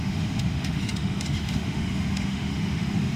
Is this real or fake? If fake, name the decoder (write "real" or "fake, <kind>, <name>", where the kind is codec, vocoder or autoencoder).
fake, autoencoder, DAC-VAE